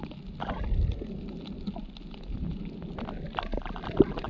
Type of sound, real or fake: real